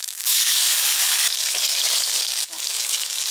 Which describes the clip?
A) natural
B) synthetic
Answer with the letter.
B